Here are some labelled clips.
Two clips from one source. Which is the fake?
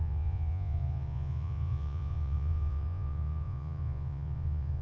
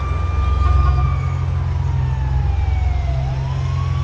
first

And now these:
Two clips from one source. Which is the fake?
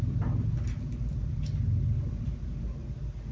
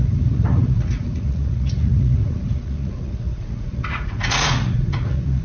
second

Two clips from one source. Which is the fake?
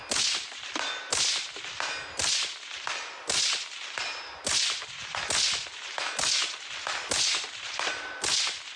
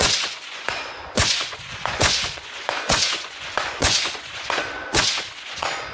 second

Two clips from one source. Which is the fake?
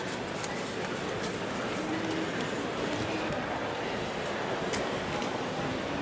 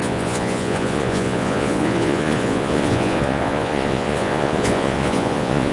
second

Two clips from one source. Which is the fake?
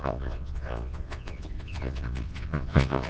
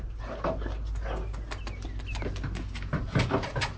first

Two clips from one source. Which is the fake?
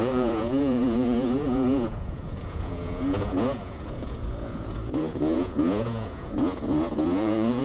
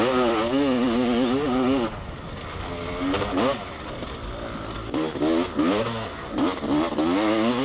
first